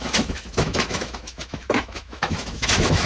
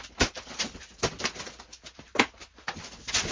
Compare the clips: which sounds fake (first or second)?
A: first